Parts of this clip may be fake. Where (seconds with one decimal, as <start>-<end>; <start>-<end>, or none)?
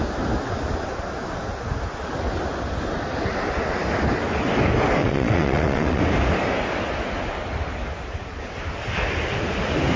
5.0-6.0